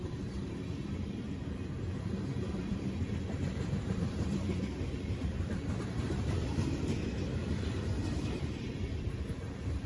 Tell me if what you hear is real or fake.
fake